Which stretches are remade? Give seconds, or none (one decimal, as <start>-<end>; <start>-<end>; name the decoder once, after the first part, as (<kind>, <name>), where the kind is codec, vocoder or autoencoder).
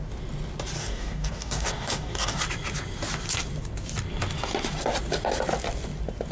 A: 0.8-2.4 (codec, DAC)